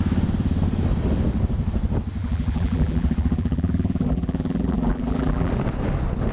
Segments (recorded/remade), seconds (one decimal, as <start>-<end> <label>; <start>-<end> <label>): 0.0-2.2 recorded; 2.2-5.5 remade; 5.5-6.3 recorded